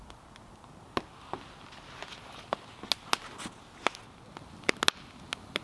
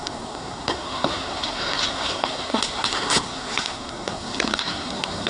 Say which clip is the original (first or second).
first